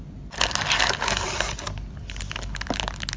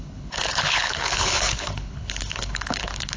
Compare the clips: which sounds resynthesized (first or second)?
second